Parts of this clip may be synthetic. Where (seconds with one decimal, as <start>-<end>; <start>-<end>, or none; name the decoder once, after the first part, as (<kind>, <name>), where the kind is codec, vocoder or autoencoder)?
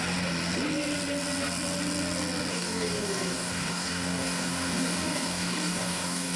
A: 2.5-6.4 (codec, DAC)